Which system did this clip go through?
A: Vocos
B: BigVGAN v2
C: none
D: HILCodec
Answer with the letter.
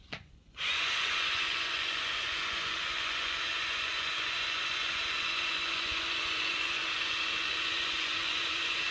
A